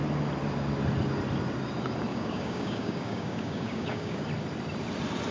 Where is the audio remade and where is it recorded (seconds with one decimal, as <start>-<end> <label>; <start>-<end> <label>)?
0.0-2.1 recorded; 2.1-4.2 remade; 4.2-5.3 recorded